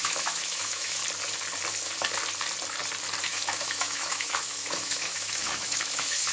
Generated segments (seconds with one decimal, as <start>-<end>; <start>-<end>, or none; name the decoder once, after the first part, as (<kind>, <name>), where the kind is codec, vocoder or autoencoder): 0.0-1.0 (autoencoder, DAC-VAE); 3.2-6.3